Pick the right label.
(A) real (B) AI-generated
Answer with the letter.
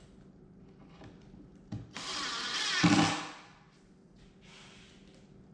A